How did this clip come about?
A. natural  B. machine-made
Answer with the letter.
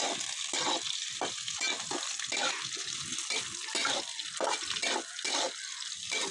A